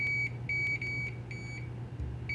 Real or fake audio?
real